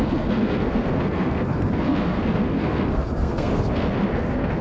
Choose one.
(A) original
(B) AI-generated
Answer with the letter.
B